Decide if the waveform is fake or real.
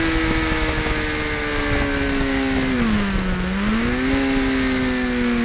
real